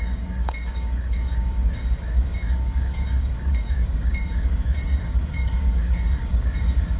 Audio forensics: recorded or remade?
remade